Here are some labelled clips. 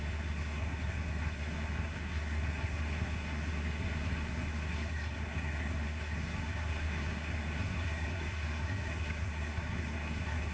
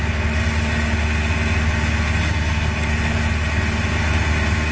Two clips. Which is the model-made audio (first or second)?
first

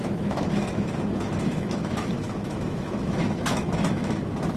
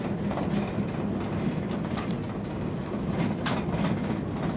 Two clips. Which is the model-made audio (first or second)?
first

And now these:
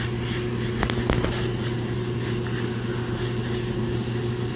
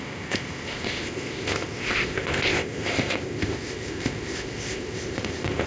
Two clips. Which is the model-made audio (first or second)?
second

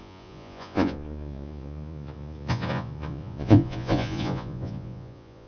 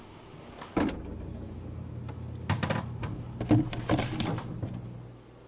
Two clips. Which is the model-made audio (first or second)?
first